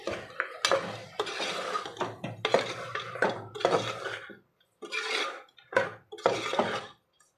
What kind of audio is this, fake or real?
real